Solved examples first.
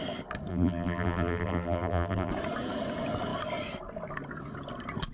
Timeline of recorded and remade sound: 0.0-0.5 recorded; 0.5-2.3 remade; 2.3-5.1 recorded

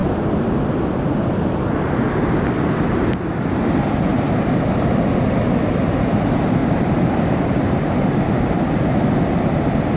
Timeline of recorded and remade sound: 0.0-4.1 recorded; 4.1-4.6 remade; 4.6-6.6 recorded; 6.6-8.4 remade; 8.4-10.0 recorded

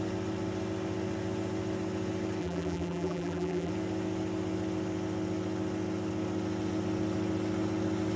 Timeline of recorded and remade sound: 0.0-2.4 recorded; 2.4-3.7 remade; 3.7-8.2 recorded

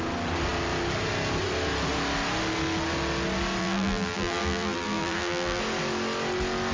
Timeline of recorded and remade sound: 0.0-3.6 recorded; 3.6-5.6 remade; 5.6-6.7 recorded